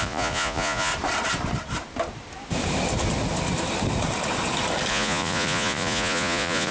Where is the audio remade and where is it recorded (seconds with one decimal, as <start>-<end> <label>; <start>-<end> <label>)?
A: 0.0-0.9 remade; 0.9-4.9 recorded; 4.9-6.7 remade